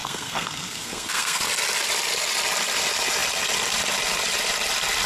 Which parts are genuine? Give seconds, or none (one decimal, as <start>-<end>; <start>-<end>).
1.4-5.1